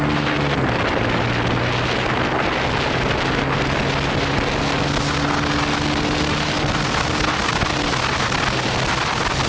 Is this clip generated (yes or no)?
no